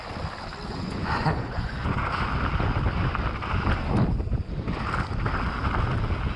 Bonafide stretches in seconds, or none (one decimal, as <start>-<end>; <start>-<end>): 0.0-0.7; 2.0-6.4